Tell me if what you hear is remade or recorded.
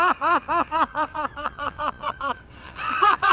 remade